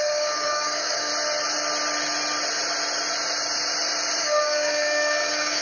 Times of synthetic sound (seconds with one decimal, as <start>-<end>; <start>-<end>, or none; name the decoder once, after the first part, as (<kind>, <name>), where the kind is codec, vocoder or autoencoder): 0.0-1.1 (codec, DAC); 4.2-5.6